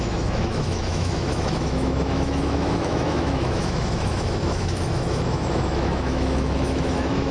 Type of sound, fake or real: fake